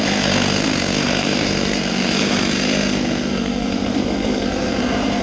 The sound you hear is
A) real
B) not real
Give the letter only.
B